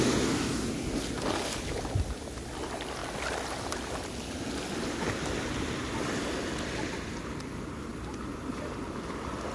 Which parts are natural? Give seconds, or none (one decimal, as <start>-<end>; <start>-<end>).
0.0-9.5